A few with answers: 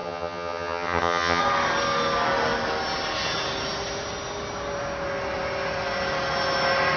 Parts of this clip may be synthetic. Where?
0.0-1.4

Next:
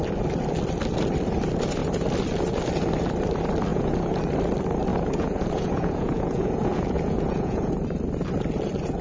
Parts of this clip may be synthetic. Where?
3.7-4.2; 4.9-7.7